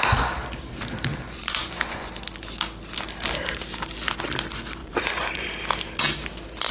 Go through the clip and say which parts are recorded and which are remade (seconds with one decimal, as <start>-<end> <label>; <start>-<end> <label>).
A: 0.0-1.1 recorded; 1.1-2.1 remade; 2.1-4.8 recorded; 4.8-5.5 remade; 5.5-6.7 recorded

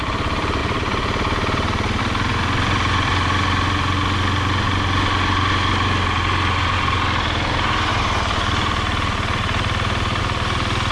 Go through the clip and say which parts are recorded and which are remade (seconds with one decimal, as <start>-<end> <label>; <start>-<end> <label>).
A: 0.0-0.6 recorded; 0.6-2.0 remade; 2.0-7.9 recorded; 7.9-10.2 remade; 10.2-10.9 recorded

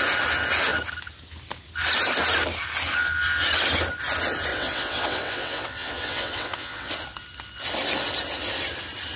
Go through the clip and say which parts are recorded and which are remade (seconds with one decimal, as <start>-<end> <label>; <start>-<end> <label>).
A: 0.0-4.5 recorded; 4.5-6.9 remade; 6.9-9.2 recorded

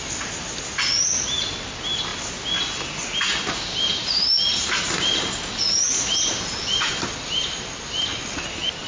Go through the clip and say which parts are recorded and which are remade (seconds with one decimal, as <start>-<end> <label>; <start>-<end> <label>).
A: 0.0-8.9 recorded